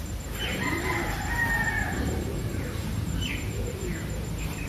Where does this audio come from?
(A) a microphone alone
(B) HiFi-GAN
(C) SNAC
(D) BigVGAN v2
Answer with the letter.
D